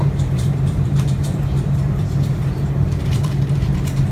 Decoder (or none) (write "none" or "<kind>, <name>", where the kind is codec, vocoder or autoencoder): vocoder, BigVGAN v2